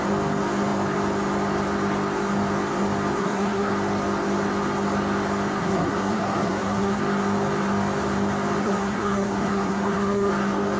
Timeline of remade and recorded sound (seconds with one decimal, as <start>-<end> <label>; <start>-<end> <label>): 0.0-3.2 recorded; 3.2-3.7 remade; 3.7-5.6 recorded; 5.6-7.0 remade; 7.0-8.6 recorded; 8.6-10.3 remade; 10.3-10.8 recorded